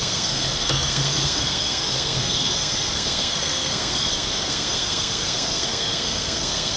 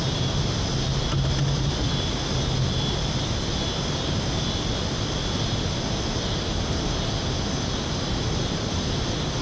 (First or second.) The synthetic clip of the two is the first